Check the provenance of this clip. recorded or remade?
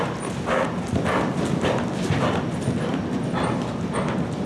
recorded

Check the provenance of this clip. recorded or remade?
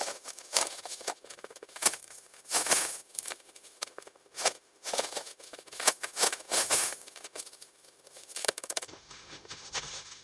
remade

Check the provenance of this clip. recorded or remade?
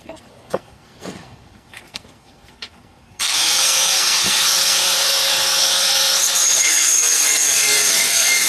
remade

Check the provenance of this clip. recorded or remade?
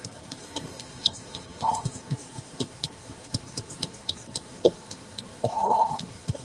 remade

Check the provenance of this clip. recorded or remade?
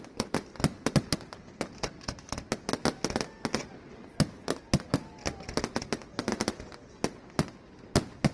recorded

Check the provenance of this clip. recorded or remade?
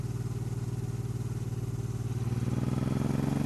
recorded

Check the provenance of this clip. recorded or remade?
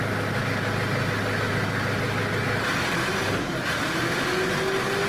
recorded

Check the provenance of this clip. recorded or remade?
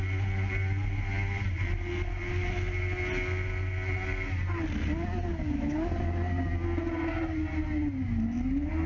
recorded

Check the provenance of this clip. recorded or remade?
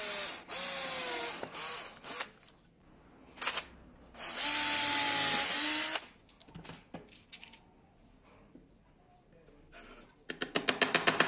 recorded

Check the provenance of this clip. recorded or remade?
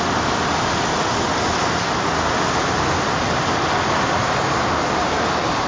recorded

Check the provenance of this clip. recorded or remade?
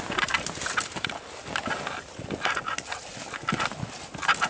recorded